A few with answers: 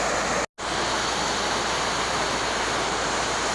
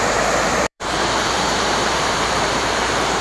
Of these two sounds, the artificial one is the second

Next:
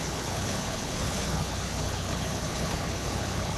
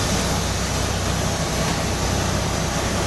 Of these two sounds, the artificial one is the first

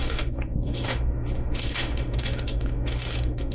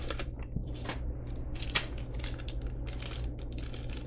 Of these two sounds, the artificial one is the first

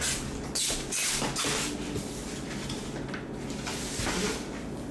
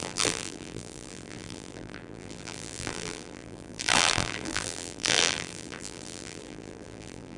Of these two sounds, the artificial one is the second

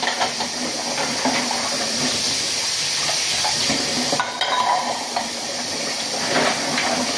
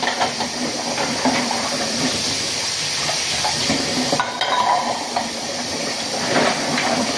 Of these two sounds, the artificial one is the second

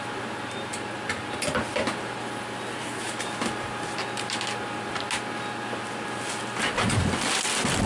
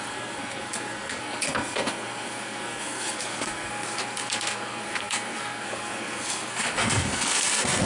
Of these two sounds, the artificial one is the second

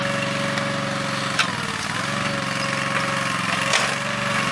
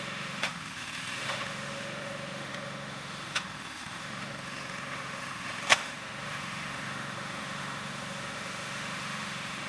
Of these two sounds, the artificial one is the second